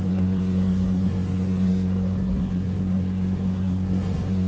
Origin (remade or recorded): remade